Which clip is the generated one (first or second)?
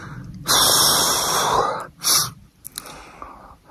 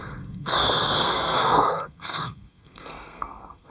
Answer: second